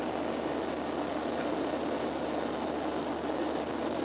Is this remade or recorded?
recorded